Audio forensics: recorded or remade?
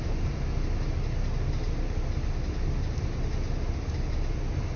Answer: recorded